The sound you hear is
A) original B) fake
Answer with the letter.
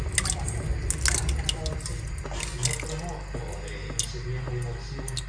A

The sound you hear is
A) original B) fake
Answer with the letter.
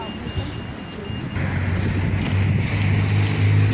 A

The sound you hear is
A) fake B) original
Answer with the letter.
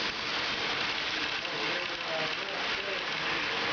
B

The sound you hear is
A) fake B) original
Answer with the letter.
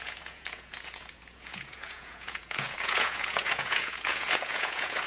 A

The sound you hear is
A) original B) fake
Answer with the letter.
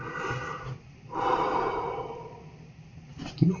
A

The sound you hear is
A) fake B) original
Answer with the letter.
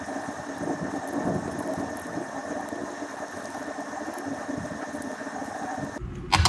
B